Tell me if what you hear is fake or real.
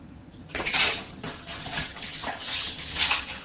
fake